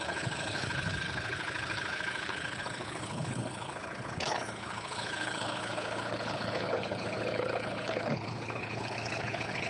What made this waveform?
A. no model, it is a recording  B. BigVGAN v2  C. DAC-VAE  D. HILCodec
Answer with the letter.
D